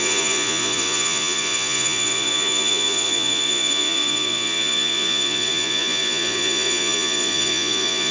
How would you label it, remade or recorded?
remade